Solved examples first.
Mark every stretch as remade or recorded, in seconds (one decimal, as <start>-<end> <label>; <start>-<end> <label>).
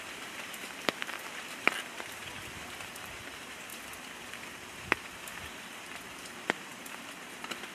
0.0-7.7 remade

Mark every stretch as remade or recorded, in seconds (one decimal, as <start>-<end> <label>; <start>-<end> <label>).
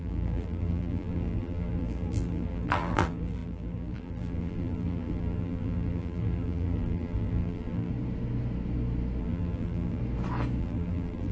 0.0-7.9 remade; 7.9-9.2 recorded; 9.2-10.0 remade; 10.0-10.6 recorded; 10.6-11.3 remade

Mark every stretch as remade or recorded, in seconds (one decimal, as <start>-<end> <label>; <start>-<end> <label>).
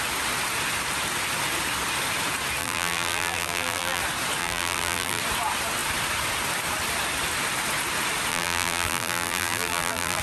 0.0-2.6 recorded; 2.6-4.0 remade; 4.0-4.4 recorded; 4.4-5.2 remade; 5.2-8.3 recorded; 8.3-10.2 remade